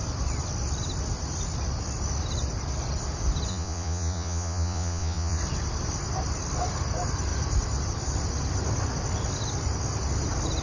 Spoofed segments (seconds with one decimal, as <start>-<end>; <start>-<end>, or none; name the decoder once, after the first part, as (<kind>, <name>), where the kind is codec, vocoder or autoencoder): 3.5-5.4 (vocoder, Vocos)